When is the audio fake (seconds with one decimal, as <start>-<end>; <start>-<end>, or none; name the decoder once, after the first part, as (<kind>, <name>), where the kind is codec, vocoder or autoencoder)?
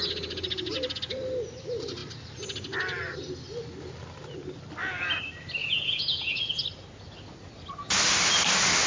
5.6-6.6 (vocoder, Vocos)